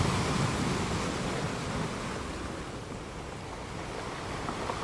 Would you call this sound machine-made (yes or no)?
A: no